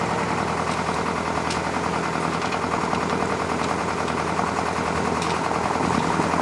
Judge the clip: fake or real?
real